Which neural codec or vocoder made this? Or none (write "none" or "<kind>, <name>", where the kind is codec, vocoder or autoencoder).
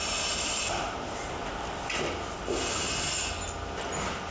none